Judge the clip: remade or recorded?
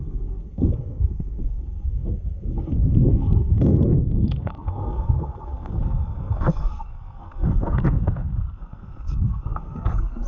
remade